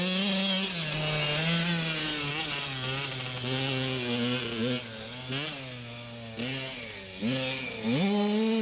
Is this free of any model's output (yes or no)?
yes